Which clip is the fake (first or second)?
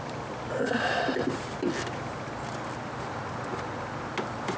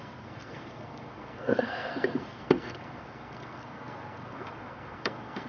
second